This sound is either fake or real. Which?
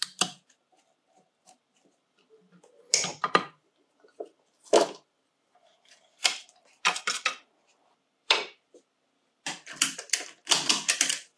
fake